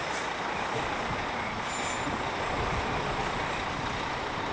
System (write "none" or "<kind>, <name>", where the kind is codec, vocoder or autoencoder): none